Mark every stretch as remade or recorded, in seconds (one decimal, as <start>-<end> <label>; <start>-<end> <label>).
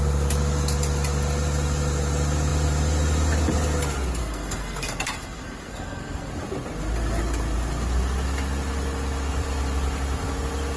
0.0-4.2 recorded; 4.2-6.3 remade; 6.3-10.8 recorded